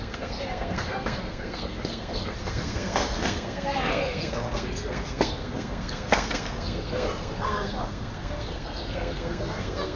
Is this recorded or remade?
remade